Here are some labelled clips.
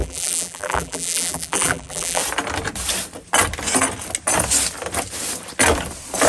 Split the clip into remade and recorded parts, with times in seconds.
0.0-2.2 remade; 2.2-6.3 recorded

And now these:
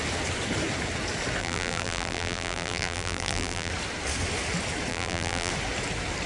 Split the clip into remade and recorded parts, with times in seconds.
0.0-1.4 recorded; 1.4-3.7 remade; 3.7-4.9 recorded; 4.9-5.5 remade; 5.5-6.3 recorded

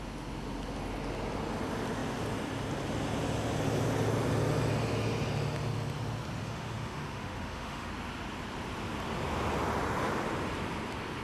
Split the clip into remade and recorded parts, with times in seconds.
0.0-6.4 recorded; 6.4-7.9 remade; 7.9-11.2 recorded

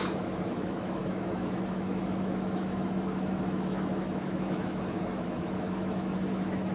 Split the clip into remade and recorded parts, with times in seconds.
0.0-6.7 remade

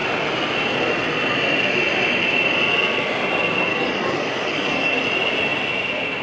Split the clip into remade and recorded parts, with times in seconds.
0.0-3.7 recorded; 3.7-5.0 remade; 5.0-6.2 recorded